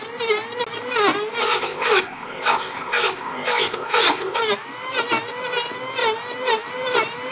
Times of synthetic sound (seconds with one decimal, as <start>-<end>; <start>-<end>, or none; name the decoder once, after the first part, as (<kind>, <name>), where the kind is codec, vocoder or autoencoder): 1.4-4.4 (codec, ZipCodec)